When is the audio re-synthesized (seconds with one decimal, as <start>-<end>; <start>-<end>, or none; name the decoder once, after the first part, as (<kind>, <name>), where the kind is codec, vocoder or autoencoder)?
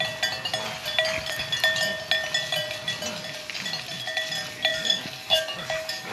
4.7-6.1 (codec, DAC)